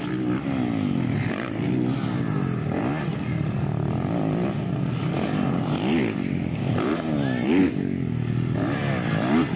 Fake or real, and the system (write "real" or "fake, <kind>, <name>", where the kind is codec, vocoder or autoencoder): real